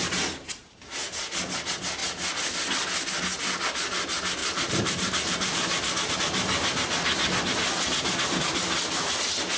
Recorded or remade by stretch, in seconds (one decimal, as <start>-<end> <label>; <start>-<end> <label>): 0.0-0.6 recorded; 0.6-1.2 remade; 1.2-4.4 recorded; 4.4-6.1 remade; 6.1-9.6 recorded